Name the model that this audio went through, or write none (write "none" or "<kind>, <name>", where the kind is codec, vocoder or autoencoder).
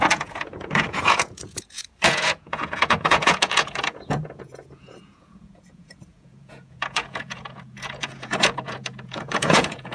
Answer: vocoder, Vocos